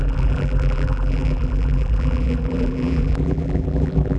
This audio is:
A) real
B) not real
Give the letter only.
B